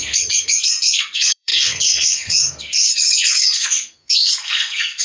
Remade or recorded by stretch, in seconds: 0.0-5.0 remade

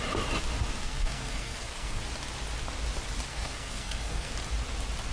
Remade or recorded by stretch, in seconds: 0.0-0.8 recorded; 0.8-2.0 remade; 2.0-3.3 recorded; 3.3-4.3 remade; 4.3-5.1 recorded

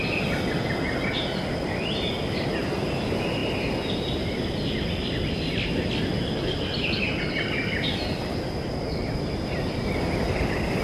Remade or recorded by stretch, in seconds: 0.0-10.8 recorded

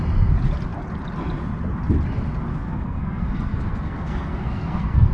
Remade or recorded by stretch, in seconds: 0.0-2.5 recorded; 2.5-5.1 remade